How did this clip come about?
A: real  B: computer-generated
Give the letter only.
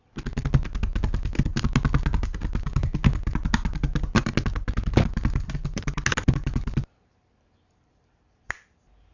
A